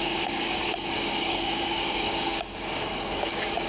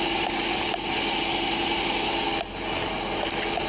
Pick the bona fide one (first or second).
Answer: second